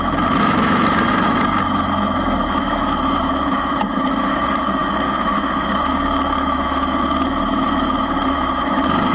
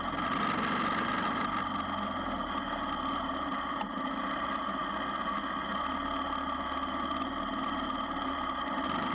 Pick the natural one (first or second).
second